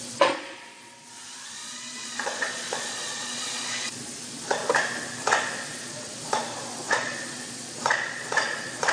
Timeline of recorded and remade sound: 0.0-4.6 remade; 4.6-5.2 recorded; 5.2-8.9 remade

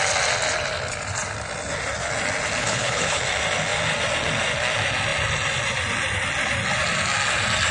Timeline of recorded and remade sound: 0.0-2.6 recorded; 2.6-3.2 remade; 3.2-7.7 recorded